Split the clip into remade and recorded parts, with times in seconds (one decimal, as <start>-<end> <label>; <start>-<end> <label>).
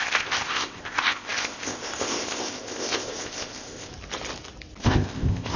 0.0-3.9 remade; 3.9-4.8 recorded; 4.8-5.6 remade